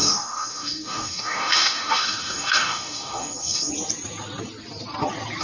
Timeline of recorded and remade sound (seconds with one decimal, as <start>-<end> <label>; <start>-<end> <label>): 0.0-3.7 remade; 3.7-5.4 recorded